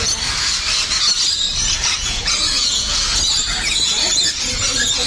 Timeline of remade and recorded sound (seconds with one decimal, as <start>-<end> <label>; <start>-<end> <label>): 0.0-1.8 recorded; 1.8-5.1 remade